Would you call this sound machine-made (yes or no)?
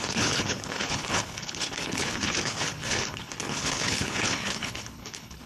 yes